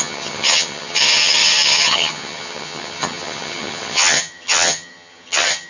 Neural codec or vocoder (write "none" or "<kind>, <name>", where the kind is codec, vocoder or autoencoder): vocoder, HiFi-GAN